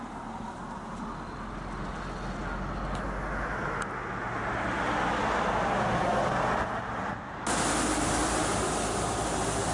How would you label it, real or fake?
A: real